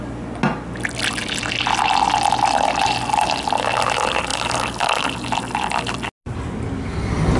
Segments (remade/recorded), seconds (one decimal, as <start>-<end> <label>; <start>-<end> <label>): 0.0-7.4 recorded